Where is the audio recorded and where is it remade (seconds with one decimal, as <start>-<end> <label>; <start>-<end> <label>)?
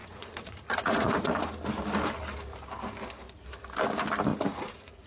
0.0-1.4 remade; 1.4-4.3 recorded; 4.3-5.1 remade